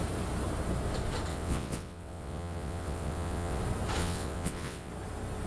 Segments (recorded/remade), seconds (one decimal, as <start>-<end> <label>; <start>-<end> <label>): 0.0-1.3 recorded; 1.3-3.6 remade; 3.6-4.0 recorded; 4.0-4.9 remade; 4.9-5.5 recorded